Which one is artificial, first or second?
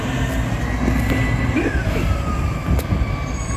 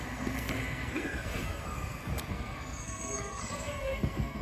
second